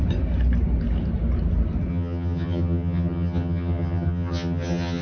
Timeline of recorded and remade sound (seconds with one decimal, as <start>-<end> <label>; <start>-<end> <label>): 0.0-1.9 recorded; 1.9-5.0 remade